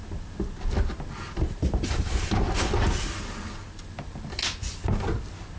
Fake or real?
real